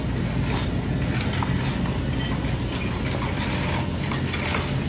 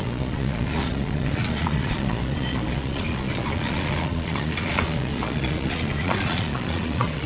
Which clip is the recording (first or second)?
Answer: first